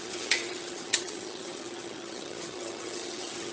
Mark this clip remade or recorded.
remade